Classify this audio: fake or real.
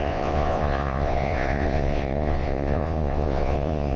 fake